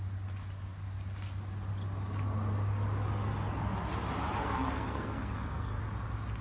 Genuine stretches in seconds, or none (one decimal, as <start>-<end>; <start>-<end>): 0.0-4.4; 5.8-6.4